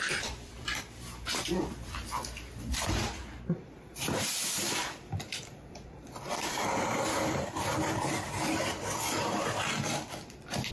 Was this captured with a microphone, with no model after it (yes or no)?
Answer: no